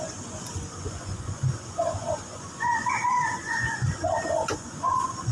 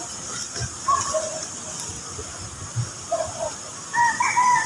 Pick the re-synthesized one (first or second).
first